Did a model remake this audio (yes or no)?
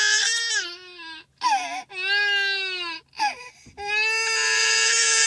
no